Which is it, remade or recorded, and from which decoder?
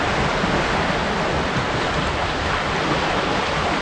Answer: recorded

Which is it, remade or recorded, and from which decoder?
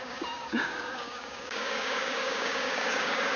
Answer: remade, codec, DAC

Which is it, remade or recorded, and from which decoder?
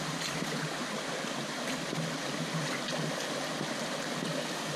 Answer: recorded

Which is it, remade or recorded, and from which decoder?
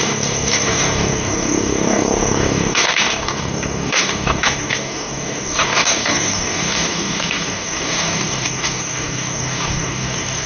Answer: remade, codec, DAC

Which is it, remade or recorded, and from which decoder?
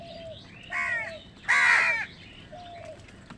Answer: recorded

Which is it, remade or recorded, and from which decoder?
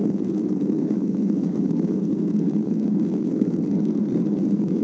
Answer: remade, codec, SNAC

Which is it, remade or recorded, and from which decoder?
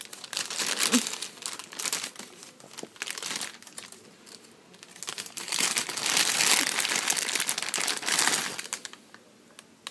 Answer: recorded